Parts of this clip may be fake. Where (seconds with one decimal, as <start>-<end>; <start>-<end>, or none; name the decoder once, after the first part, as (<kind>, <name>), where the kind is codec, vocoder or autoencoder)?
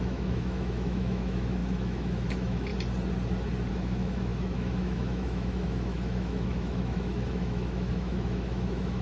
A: 0.0-2.7 (autoencoder, DAC-VAE); 3.7-9.0